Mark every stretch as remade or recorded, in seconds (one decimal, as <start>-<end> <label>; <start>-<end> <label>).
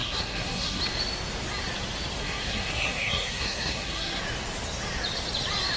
0.0-0.8 remade; 0.8-2.2 recorded; 2.2-4.2 remade; 4.2-5.8 recorded